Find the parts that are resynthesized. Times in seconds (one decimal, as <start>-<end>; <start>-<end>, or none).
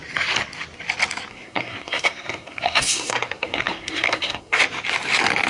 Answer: 1.3-4.6